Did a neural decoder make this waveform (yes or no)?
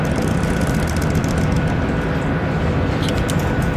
no